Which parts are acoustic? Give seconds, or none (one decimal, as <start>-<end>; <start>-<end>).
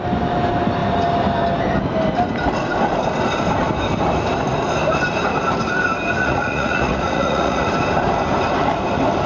0.0-6.2; 7.7-9.3